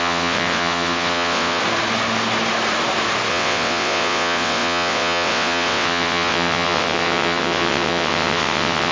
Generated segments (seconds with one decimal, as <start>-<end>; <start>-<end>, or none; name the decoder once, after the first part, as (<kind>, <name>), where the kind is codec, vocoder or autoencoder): 0.0-1.6 (vocoder, WaveNeXt); 3.3-8.9